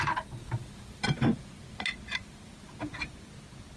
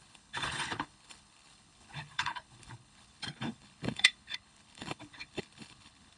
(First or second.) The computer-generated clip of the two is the second